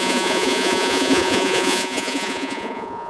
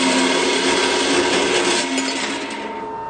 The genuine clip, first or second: second